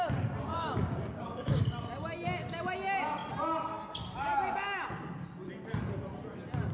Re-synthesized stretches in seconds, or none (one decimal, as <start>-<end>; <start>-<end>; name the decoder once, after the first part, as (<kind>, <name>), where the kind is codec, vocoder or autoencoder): 0.5-1.6 (codec, DAC)

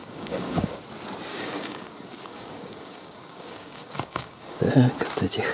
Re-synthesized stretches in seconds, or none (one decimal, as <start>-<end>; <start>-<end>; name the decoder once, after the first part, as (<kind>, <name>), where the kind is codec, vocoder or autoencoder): 0.0-0.8 (codec, DAC); 1.3-4.6

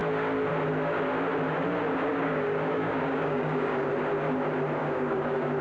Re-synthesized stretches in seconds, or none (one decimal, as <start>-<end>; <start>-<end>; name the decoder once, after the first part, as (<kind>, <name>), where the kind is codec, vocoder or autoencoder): 2.1-3.9 (codec, DAC); 4.8-5.6

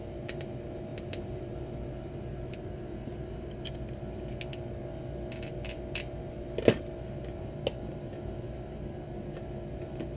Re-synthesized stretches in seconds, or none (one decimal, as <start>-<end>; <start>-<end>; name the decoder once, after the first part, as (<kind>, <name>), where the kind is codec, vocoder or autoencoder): none